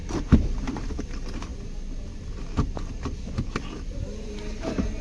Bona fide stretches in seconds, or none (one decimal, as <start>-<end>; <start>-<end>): 0.9-5.0

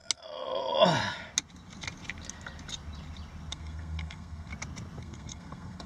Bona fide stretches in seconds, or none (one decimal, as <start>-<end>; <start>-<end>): 0.0-3.5; 4.5-5.0

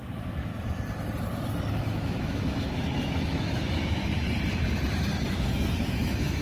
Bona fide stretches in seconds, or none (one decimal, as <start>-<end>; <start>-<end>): 0.5-1.7; 4.0-5.3

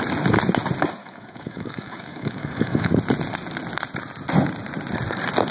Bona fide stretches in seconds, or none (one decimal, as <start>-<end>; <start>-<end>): 0.0-1.0; 2.9-5.5

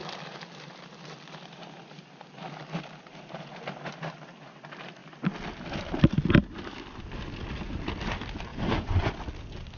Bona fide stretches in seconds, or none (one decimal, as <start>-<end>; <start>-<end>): 0.0-8.5; 9.1-9.8

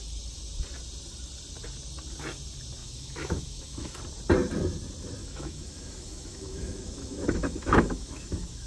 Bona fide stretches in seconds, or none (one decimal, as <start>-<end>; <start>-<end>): 0.0-2.8; 4.0-5.2

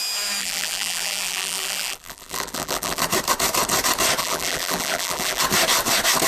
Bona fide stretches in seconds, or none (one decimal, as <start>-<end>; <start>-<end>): 0.0-0.4; 3.0-4.2; 5.4-6.3